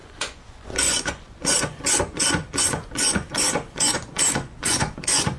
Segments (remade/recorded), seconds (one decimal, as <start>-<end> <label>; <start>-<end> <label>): 0.0-5.4 remade